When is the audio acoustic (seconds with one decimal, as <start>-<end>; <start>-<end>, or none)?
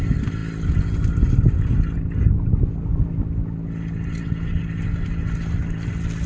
0.0-6.3